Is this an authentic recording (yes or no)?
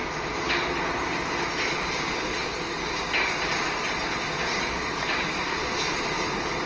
yes